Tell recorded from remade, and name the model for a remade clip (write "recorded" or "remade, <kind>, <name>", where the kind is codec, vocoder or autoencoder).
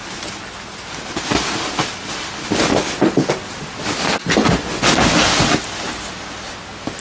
recorded